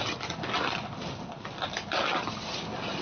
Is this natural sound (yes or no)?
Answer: yes